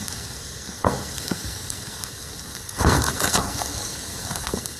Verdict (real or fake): fake